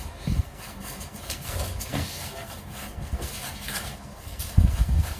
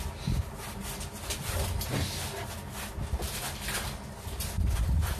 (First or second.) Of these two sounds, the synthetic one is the first